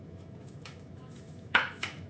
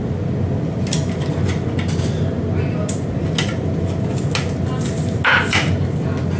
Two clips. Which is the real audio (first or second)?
second